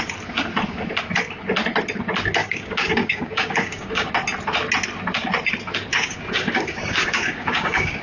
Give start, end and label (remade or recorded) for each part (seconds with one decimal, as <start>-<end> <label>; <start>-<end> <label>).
0.0-2.4 recorded; 2.4-4.1 remade; 4.1-5.9 recorded; 5.9-8.0 remade